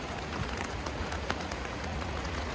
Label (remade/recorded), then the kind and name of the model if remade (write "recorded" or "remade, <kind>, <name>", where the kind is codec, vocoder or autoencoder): remade, vocoder, Vocos